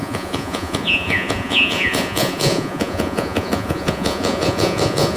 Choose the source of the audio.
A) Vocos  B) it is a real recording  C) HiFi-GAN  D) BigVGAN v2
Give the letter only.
A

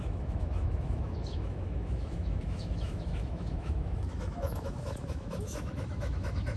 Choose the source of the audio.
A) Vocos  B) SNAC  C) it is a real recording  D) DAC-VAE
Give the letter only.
D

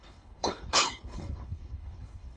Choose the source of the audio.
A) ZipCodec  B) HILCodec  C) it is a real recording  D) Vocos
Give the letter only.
B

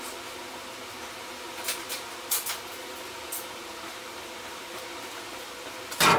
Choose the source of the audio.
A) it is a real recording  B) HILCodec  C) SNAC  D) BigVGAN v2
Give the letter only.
A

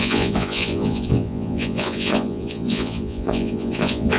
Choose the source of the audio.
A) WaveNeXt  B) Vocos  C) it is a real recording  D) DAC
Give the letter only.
B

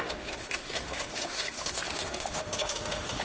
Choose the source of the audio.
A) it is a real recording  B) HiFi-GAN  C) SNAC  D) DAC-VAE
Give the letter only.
D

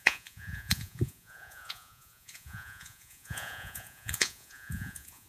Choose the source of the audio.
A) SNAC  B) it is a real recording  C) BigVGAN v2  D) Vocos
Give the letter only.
D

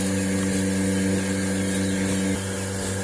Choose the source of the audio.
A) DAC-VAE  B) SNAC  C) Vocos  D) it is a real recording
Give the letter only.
D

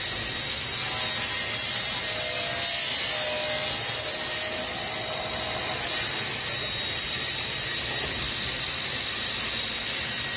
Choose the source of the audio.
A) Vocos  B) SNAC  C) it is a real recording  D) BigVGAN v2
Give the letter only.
C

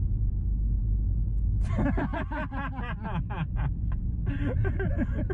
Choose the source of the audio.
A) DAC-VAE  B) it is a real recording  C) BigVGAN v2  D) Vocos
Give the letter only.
B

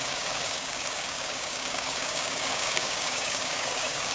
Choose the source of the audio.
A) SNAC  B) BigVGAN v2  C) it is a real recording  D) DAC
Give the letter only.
D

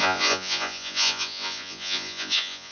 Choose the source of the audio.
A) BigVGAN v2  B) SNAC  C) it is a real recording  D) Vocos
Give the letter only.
D